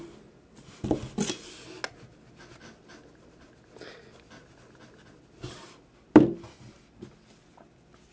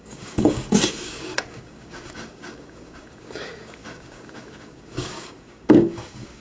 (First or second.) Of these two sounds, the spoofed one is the second